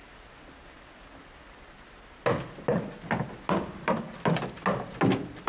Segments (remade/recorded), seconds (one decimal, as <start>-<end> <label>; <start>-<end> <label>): 0.0-5.5 recorded